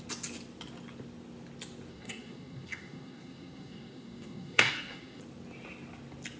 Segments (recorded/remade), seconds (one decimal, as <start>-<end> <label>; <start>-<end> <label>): 0.0-1.9 recorded; 1.9-5.2 remade; 5.2-6.4 recorded